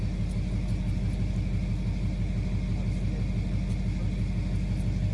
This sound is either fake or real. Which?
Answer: real